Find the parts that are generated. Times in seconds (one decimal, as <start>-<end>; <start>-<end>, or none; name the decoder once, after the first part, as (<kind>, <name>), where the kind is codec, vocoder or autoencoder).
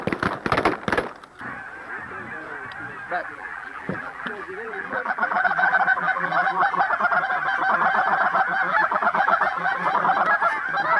3.2-6.8 (vocoder, BigVGAN v2); 8.7-10.0